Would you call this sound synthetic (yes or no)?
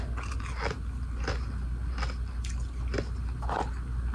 no